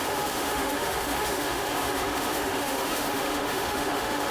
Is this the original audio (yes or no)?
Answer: no